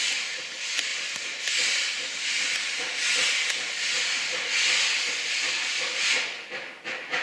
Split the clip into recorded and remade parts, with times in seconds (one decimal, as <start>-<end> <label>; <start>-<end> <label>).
0.0-7.2 recorded